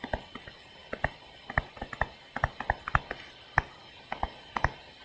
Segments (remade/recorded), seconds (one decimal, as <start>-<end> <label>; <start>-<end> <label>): 0.0-5.0 recorded